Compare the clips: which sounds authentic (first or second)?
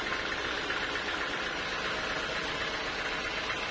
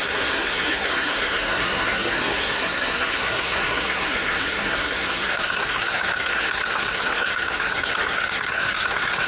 first